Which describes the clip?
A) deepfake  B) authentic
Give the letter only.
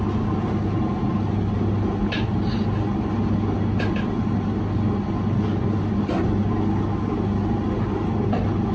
B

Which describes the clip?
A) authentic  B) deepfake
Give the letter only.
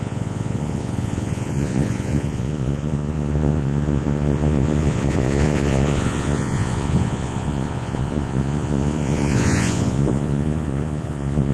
B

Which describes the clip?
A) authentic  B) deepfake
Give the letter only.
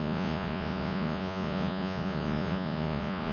B